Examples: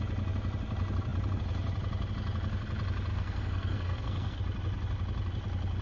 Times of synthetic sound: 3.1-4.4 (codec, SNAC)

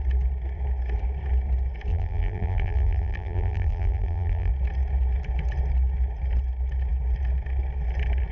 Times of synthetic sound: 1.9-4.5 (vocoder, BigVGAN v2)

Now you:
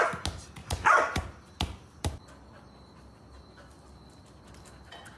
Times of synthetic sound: 0.6-2.2 (vocoder, BigVGAN v2)

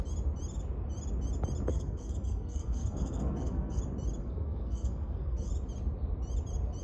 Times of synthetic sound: 1.7-3.8 (codec, SNAC); 4.2-5.5

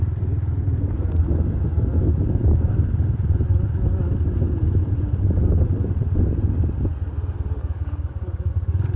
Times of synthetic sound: 7.6-8.5 (codec, DAC)

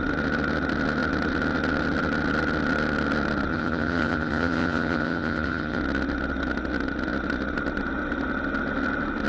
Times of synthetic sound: 3.5-5.8 (vocoder, HiFi-GAN)